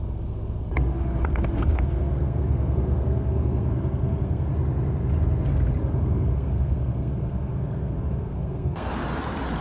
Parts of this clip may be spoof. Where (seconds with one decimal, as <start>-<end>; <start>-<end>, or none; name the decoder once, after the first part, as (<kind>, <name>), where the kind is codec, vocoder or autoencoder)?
0.0-4.5 (codec, SNAC); 5.8-8.9